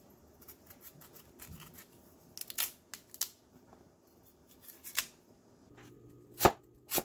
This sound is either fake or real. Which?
real